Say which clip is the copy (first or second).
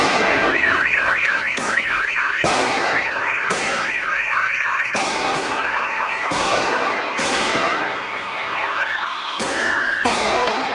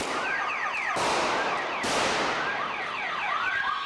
first